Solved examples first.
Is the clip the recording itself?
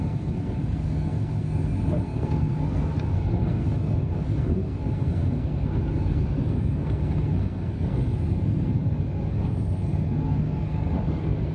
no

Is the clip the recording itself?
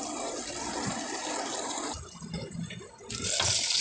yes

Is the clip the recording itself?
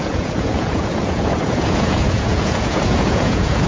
no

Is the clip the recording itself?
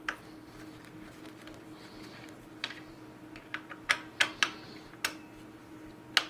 yes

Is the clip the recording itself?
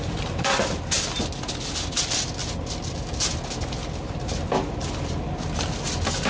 yes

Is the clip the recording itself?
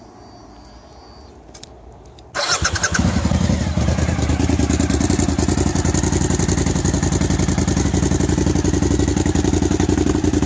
yes